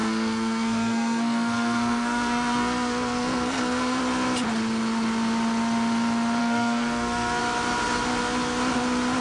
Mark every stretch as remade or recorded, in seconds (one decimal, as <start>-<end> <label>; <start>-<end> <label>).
0.0-4.0 remade; 4.0-6.4 recorded; 6.4-7.4 remade; 7.4-9.2 recorded